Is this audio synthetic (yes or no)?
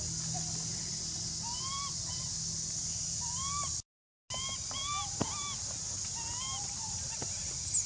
no